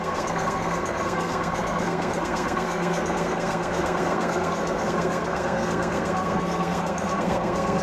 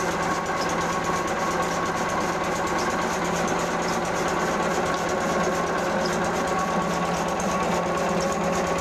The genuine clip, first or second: second